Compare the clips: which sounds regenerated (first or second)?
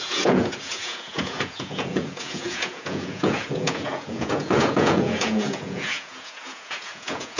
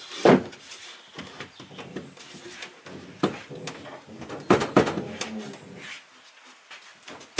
first